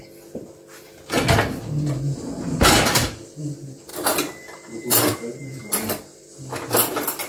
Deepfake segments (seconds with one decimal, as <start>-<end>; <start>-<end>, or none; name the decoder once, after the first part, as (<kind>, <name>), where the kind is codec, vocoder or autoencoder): none

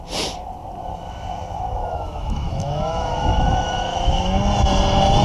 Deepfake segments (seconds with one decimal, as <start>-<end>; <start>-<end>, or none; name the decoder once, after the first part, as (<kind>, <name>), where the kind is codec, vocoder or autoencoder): 1.8-4.2 (autoencoder, DAC-VAE)

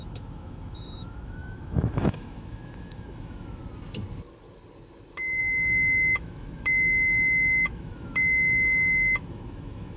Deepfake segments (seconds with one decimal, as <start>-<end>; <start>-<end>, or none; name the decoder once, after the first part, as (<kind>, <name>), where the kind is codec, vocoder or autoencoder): 0.0-3.6 (autoencoder, DAC-VAE); 5.4-10.0